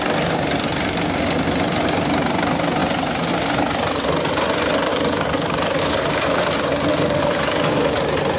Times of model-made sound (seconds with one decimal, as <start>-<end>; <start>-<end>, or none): 4.9-5.8; 6.9-8.0